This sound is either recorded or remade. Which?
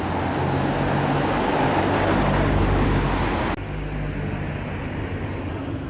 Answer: recorded